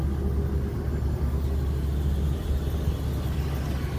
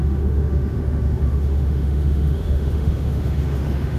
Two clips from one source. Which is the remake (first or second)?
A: second